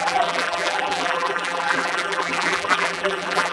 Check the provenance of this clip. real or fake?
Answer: fake